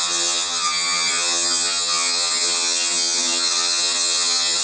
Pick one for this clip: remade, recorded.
remade